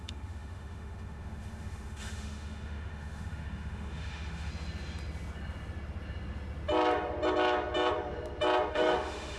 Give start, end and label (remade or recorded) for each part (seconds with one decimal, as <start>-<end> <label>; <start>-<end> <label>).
0.0-4.5 remade; 4.5-8.7 recorded; 8.7-9.4 remade